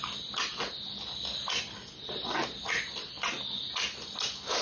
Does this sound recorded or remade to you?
recorded